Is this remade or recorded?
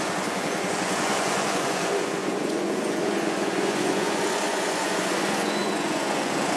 remade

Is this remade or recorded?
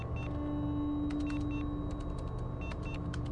recorded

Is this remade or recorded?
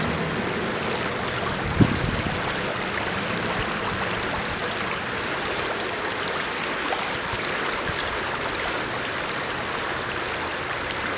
recorded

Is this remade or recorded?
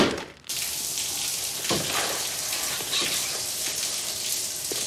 recorded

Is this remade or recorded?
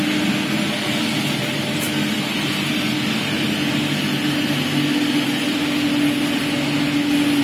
recorded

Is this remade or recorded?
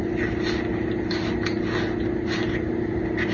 recorded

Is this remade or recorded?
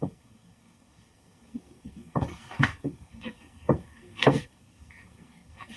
remade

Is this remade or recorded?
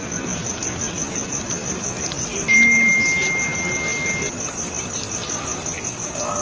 recorded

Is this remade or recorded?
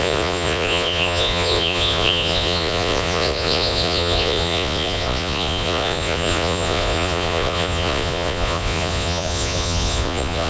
remade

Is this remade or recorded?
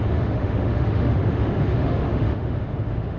remade